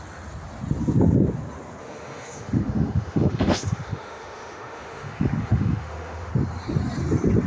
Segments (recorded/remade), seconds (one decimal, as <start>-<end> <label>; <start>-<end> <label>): 0.0-1.8 recorded; 1.8-6.3 remade; 6.3-7.5 recorded